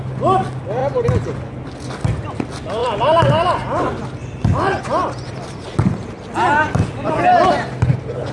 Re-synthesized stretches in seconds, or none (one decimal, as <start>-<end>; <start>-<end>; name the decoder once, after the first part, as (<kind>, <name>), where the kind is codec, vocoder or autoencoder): none